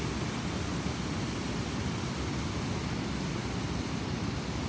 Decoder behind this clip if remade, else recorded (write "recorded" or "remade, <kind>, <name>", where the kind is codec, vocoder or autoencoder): recorded